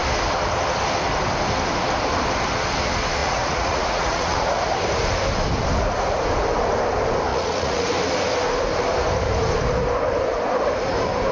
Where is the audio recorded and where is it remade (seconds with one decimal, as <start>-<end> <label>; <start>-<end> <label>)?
0.0-3.2 recorded; 3.2-4.6 remade; 4.6-7.3 recorded; 7.3-7.9 remade; 7.9-11.3 recorded